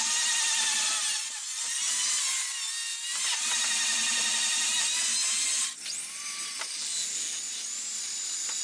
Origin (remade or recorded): recorded